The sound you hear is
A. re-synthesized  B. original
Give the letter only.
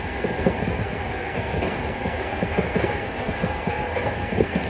A